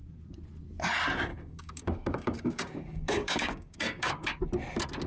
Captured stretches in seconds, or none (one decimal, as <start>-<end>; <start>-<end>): 0.0-1.3; 4.4-5.1